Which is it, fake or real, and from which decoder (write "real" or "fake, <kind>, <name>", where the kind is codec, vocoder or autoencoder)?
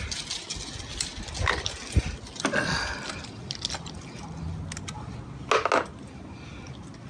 real